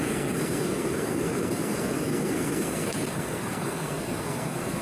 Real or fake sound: fake